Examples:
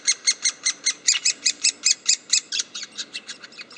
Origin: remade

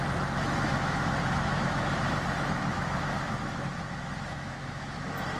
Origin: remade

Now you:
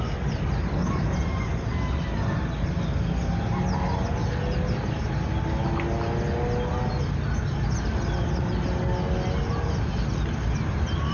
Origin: recorded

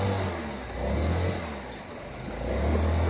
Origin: recorded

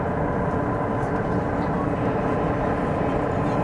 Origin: recorded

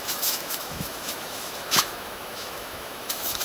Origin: remade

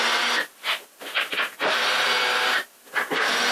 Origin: recorded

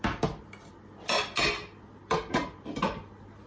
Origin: recorded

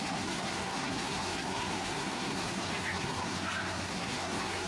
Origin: remade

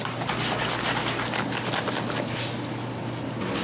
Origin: recorded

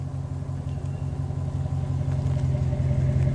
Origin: recorded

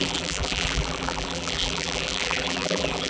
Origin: remade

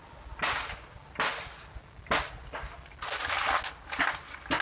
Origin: recorded